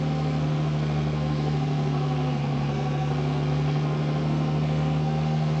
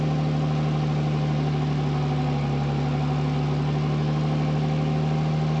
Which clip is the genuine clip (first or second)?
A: second